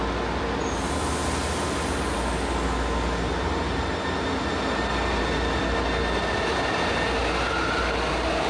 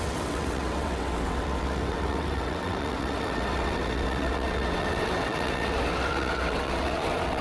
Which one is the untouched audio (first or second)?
first